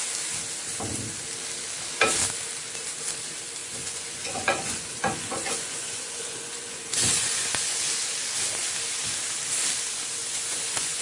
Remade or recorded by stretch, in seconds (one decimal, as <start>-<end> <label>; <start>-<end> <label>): 0.0-3.6 recorded; 3.6-7.8 remade; 7.8-10.2 recorded; 10.2-11.0 remade